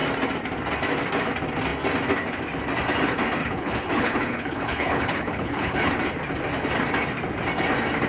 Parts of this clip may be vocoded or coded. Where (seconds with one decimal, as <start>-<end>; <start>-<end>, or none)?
3.4-5.9